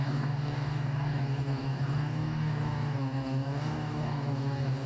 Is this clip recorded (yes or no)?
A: no